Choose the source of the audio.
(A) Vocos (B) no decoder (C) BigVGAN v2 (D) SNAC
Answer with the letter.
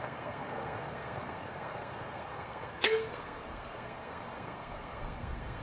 D